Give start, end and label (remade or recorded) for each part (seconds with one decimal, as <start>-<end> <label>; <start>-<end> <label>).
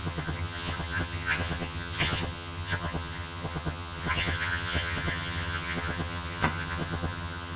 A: 0.0-7.6 remade